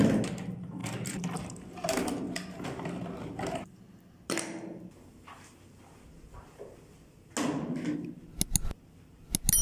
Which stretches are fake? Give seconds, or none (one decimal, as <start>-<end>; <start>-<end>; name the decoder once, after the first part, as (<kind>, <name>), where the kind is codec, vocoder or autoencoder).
none